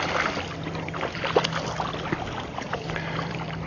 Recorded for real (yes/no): yes